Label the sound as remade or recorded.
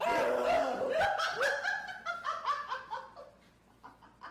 recorded